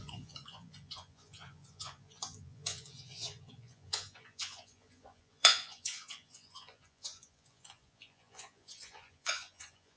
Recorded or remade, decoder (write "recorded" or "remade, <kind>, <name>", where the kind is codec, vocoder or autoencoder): remade, vocoder, Vocos